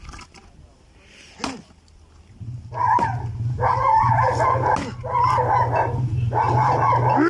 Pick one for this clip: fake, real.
real